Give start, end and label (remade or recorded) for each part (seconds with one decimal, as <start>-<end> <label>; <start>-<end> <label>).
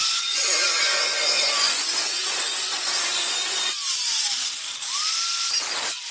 0.0-3.7 remade; 3.7-6.1 recorded